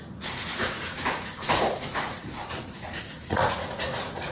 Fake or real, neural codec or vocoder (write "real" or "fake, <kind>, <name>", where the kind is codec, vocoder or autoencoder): fake, vocoder, Vocos